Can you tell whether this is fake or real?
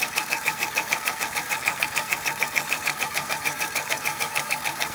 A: fake